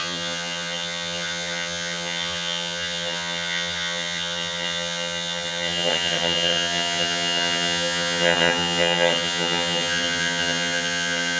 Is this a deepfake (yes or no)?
yes